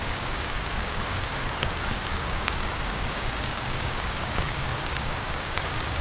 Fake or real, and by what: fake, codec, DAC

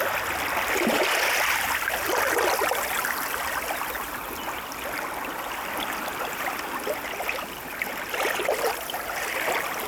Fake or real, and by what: real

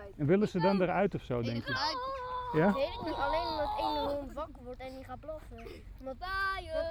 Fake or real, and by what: real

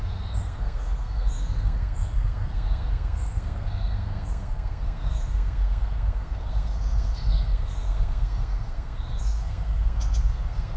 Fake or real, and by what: fake, codec, SNAC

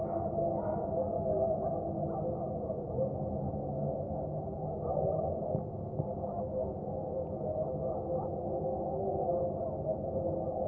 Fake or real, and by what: real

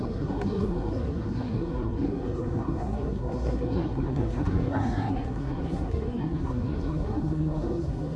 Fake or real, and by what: fake, codec, SNAC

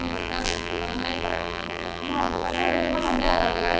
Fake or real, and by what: fake, vocoder, BigVGAN v2